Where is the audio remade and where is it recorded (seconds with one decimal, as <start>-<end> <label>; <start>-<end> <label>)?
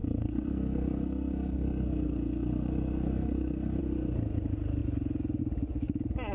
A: 0.0-3.8 remade; 3.8-6.3 recorded